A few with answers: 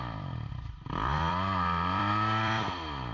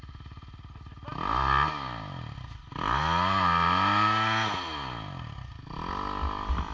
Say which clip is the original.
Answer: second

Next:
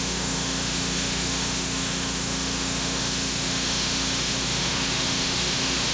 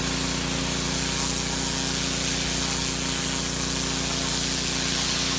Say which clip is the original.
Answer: second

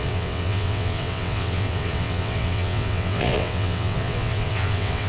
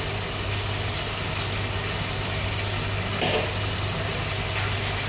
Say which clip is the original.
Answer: second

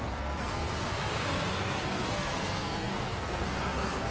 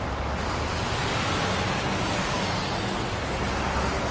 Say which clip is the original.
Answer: second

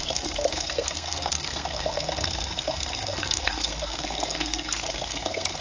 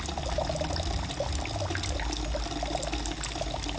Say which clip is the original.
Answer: second